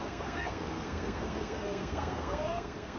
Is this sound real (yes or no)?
no